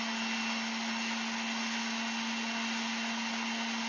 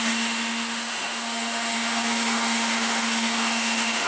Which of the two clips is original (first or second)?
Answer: first